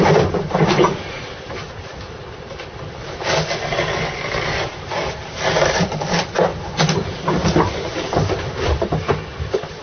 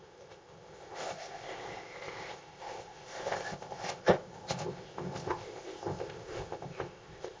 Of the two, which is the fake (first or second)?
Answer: second